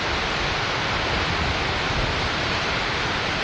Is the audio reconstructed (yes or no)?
no